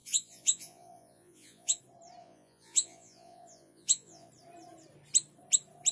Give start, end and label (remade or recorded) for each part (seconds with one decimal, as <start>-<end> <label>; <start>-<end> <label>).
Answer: 0.0-1.8 remade; 1.8-2.2 recorded; 2.2-4.3 remade; 4.3-5.9 recorded